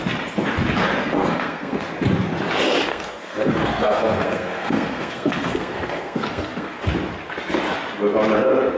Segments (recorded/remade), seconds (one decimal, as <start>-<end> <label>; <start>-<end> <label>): 0.0-1.0 recorded; 1.0-1.9 remade; 1.9-2.9 recorded; 2.9-6.8 remade; 6.8-8.8 recorded